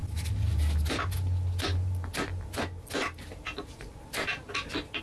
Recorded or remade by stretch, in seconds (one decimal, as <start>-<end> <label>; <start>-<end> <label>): 0.0-5.0 recorded